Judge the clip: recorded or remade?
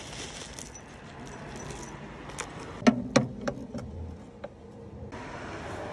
recorded